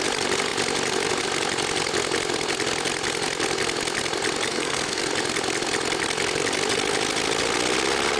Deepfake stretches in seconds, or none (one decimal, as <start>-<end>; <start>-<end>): 4.5-5.0